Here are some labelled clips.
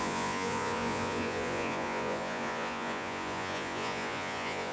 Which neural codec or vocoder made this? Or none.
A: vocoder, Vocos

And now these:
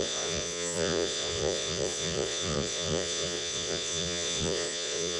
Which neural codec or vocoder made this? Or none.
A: vocoder, Vocos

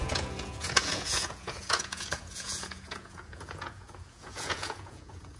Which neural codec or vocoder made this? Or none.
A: vocoder, Vocos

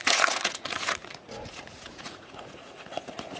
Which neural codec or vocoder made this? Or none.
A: vocoder, Vocos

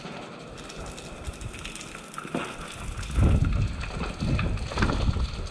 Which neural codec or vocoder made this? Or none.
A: none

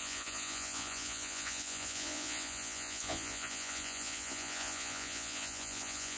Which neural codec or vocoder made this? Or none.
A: vocoder, Vocos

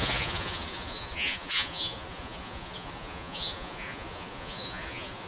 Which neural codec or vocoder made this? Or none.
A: vocoder, Vocos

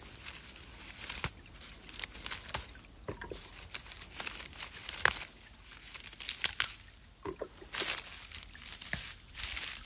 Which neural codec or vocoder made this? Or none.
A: none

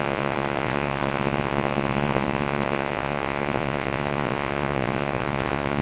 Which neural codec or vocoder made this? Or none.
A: vocoder, Vocos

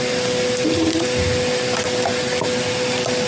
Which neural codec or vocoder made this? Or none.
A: none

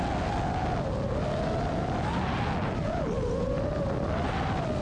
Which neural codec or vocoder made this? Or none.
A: none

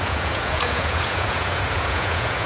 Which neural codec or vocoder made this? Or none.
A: vocoder, Vocos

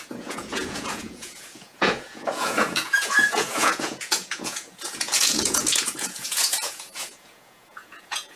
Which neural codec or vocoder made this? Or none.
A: vocoder, Vocos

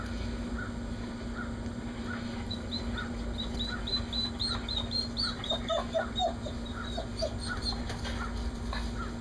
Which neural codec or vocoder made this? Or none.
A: none